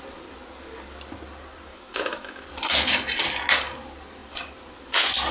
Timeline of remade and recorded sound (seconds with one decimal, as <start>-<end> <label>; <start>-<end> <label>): 0.0-1.7 recorded; 1.7-2.4 remade; 2.4-5.3 recorded